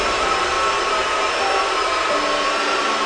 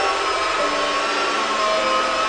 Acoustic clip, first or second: second